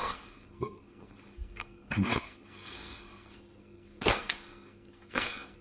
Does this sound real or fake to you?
fake